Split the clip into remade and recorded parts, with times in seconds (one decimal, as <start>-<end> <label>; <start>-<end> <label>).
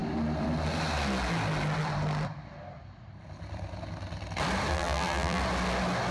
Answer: 0.0-4.7 recorded; 4.7-5.4 remade; 5.4-6.1 recorded